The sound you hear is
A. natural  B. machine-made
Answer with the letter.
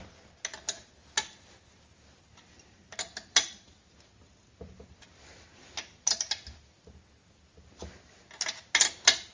A